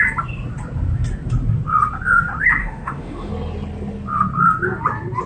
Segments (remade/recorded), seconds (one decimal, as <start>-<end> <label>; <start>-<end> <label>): 0.0-2.6 recorded; 2.6-3.3 remade; 3.3-5.3 recorded